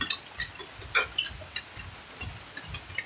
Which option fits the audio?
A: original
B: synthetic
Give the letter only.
A